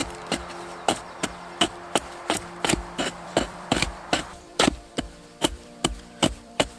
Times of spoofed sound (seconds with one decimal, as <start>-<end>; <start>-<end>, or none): 3.1-6.8